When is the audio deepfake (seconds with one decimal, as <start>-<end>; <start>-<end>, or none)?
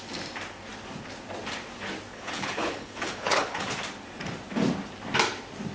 2.1-3.7